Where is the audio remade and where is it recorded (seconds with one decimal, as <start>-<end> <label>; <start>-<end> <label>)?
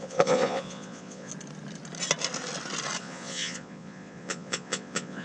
0.0-1.3 remade; 1.3-3.0 recorded; 3.0-5.2 remade